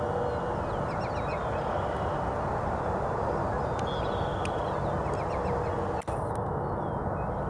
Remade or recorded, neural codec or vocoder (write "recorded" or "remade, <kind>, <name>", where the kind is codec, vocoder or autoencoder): recorded